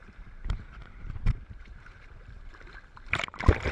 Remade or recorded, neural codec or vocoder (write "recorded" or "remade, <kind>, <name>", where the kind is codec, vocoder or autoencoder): remade, vocoder, BigVGAN v2